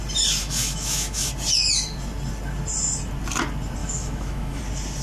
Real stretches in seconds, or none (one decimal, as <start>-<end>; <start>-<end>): 0.0-0.4; 1.3-3.8; 4.6-5.0